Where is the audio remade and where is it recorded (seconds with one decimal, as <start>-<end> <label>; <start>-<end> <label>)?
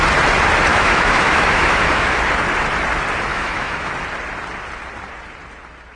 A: 0.0-0.7 recorded; 0.7-2.2 remade; 2.2-3.3 recorded; 3.3-3.9 remade; 3.9-6.0 recorded